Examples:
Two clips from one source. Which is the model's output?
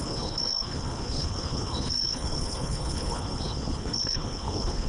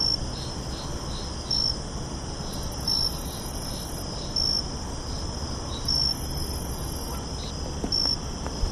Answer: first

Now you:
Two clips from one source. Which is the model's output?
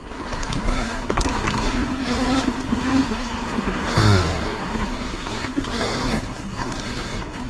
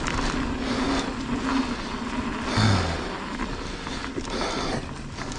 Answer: first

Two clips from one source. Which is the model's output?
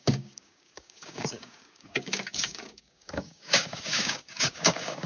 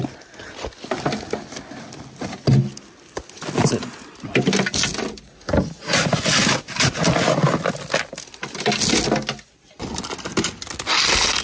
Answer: first